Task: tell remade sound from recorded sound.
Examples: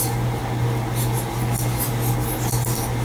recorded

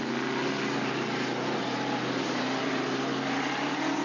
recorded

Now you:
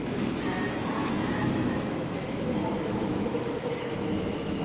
remade